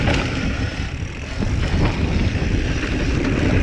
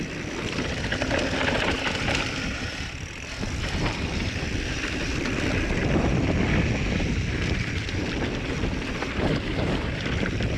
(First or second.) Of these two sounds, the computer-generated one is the second